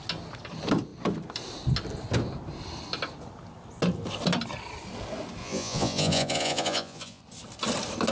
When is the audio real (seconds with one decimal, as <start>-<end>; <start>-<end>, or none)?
0.0-5.4; 7.2-8.1